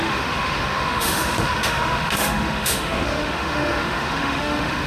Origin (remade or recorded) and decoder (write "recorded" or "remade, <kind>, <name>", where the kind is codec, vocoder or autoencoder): remade, autoencoder, DAC-VAE